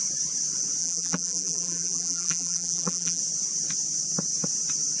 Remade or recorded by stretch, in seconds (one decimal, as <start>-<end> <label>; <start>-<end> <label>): 0.0-0.8 recorded; 0.8-3.2 remade; 3.2-5.0 recorded